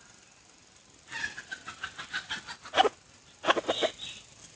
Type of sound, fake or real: fake